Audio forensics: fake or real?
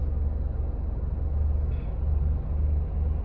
real